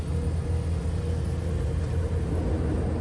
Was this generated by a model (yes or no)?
no